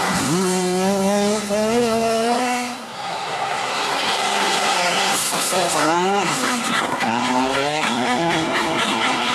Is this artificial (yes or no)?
yes